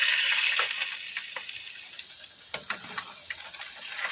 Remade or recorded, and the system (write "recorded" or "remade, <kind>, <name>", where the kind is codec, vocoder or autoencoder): recorded